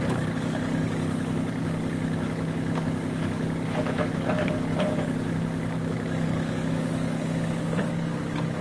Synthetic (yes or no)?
yes